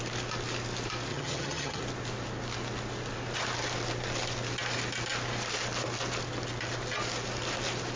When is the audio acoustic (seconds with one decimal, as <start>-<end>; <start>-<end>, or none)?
0.0-1.1; 1.8-8.0